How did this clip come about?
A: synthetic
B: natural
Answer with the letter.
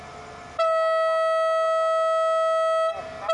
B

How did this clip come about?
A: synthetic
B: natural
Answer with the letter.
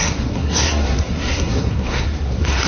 A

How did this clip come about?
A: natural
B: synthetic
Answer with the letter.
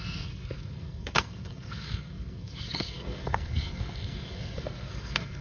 B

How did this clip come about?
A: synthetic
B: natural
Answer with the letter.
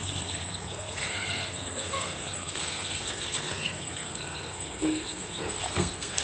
A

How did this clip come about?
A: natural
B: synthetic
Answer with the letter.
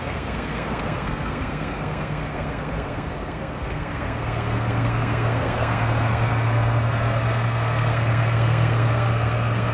B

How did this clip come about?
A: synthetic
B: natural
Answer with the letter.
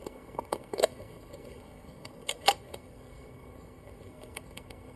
A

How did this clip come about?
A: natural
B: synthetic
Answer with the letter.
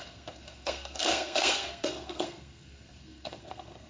B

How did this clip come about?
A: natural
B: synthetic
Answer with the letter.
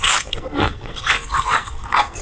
B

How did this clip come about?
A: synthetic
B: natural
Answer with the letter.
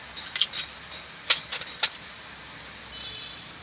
B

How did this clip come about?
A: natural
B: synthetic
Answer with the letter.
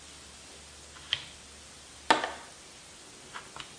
A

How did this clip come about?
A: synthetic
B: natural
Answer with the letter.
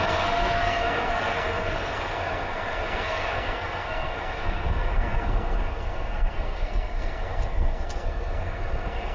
A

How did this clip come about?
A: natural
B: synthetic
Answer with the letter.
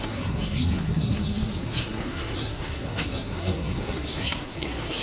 B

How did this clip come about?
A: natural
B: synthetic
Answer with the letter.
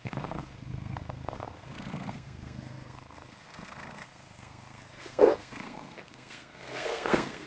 B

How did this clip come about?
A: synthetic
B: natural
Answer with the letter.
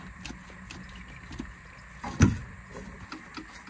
B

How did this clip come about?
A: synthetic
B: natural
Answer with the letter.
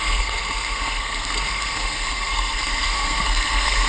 A